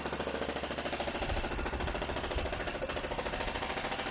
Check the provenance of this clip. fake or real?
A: real